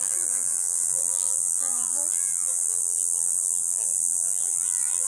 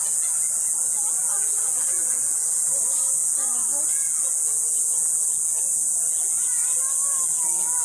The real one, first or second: second